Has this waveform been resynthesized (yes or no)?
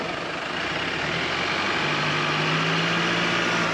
no